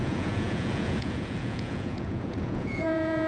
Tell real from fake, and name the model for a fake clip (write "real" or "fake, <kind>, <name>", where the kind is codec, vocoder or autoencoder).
fake, vocoder, Vocos